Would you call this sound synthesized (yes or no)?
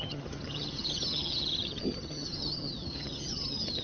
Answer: yes